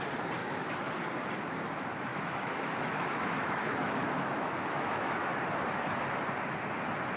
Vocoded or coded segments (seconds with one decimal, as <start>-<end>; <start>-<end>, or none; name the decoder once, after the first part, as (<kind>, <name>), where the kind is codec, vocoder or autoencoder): 0.4-0.9 (autoencoder, DAC-VAE); 2.1-5.3